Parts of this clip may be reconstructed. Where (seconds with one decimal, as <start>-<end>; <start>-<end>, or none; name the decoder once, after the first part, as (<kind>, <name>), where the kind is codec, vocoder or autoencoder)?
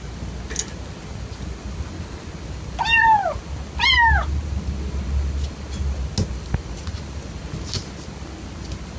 none